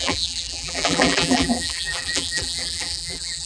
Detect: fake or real fake